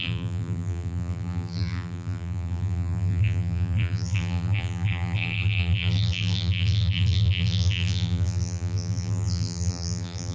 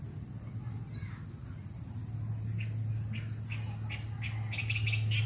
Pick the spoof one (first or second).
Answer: first